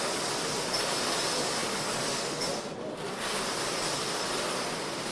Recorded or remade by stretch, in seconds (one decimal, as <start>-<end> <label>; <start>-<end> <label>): 0.0-5.1 recorded